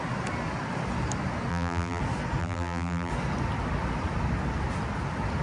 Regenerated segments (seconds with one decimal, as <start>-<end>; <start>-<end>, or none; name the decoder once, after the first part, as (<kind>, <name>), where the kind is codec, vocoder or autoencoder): 1.5-2.0 (vocoder, BigVGAN v2); 2.4-3.1